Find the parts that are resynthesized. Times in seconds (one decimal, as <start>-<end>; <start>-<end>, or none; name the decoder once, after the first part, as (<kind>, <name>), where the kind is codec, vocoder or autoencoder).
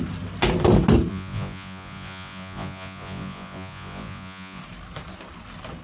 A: 1.1-4.6 (vocoder, Vocos)